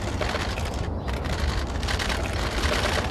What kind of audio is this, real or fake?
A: real